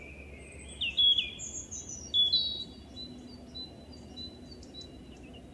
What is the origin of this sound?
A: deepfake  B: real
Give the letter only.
B